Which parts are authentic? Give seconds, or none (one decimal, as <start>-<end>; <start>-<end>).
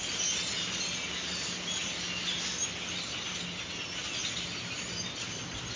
0.0-5.8